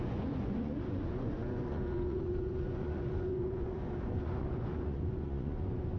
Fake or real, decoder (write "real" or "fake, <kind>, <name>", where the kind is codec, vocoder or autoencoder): fake, vocoder, Vocos